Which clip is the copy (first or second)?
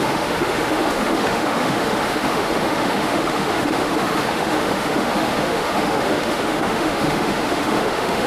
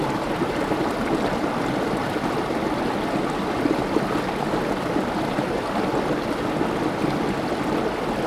first